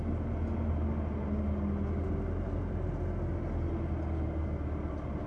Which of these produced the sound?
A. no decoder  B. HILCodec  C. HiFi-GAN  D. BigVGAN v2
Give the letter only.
A